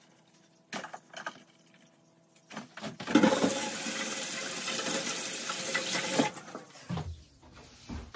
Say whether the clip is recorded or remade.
recorded